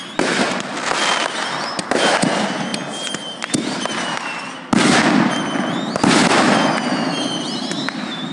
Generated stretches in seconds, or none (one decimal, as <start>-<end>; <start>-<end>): none